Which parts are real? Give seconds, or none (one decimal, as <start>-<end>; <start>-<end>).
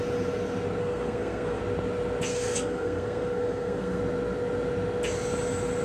0.0-0.8; 1.6-2.3; 4.0-5.8